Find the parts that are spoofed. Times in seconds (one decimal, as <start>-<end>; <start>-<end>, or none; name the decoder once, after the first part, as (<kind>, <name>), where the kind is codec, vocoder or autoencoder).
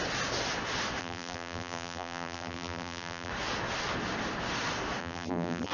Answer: 1.0-3.3 (vocoder, BigVGAN v2); 5.0-5.7